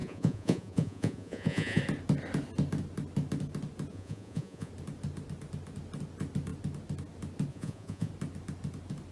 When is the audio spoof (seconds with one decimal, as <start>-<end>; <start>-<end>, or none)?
0.0-1.8; 3.9-4.7; 7.5-8.1